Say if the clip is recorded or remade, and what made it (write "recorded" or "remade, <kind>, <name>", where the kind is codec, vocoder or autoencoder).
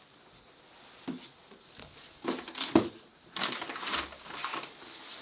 recorded